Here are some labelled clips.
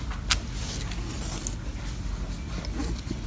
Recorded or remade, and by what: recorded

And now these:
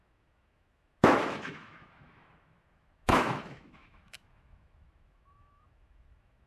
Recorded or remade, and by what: remade, autoencoder, DAC-VAE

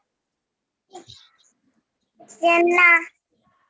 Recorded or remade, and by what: recorded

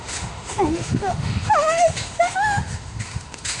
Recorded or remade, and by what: remade, autoencoder, DAC-VAE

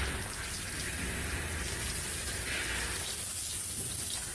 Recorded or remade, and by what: recorded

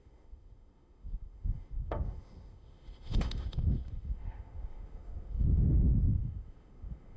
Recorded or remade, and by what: remade, autoencoder, DAC-VAE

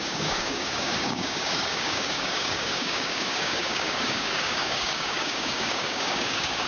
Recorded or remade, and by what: remade, codec, DAC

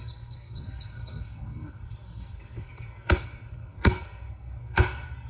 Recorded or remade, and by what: remade, codec, SNAC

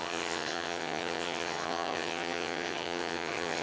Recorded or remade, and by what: remade, vocoder, HiFi-GAN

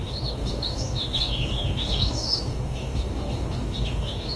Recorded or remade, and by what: remade, codec, DAC